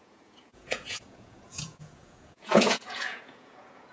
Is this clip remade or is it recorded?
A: remade